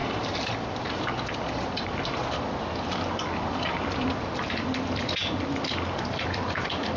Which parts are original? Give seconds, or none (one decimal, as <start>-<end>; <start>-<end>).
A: none